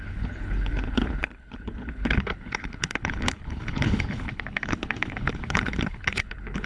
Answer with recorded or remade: remade